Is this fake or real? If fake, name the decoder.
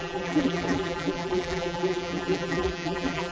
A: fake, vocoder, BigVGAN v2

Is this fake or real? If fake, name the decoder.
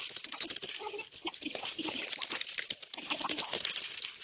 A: real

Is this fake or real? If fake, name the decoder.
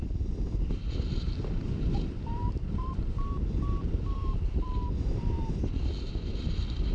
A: fake, vocoder, BigVGAN v2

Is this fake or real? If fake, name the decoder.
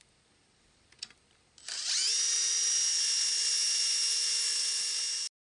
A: real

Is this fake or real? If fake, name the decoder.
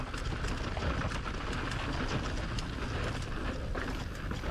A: real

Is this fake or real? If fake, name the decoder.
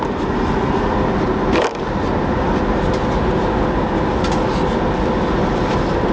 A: real